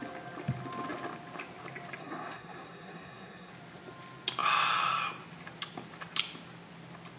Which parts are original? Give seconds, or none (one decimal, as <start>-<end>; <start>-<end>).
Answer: 0.0-2.0; 3.5-7.2